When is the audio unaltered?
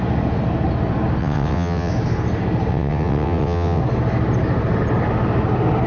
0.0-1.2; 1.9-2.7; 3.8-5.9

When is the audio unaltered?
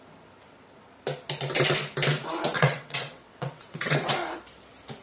0.0-2.2; 4.1-5.0